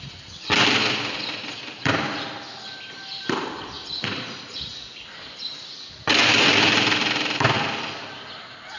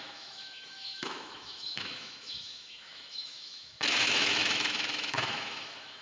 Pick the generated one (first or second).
second